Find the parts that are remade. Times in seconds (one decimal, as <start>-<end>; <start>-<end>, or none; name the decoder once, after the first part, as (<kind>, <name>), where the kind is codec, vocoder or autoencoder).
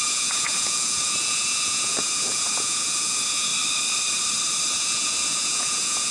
0.0-3.5 (vocoder, Vocos); 4.8-6.1